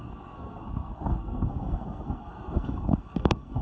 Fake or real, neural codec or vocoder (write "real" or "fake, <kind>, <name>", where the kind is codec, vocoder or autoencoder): fake, codec, SNAC